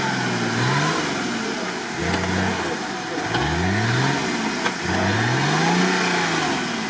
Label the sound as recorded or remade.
recorded